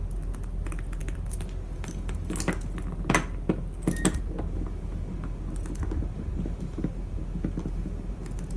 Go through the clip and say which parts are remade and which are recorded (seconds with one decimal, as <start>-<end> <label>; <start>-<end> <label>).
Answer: 0.0-8.6 recorded